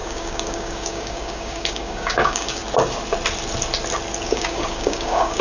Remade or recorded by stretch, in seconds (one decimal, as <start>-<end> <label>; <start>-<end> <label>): 0.0-2.6 remade; 2.6-4.2 recorded; 4.2-5.4 remade